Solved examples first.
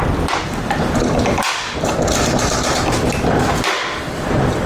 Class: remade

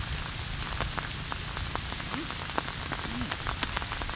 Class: recorded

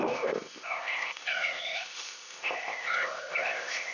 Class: remade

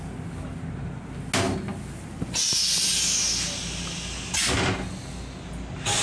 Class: recorded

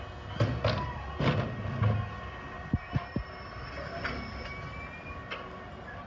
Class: recorded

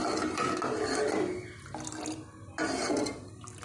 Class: recorded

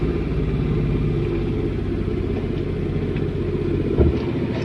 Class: recorded